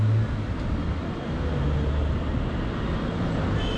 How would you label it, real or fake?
real